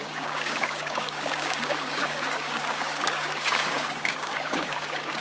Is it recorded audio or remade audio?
remade